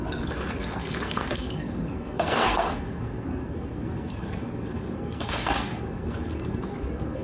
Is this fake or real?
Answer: fake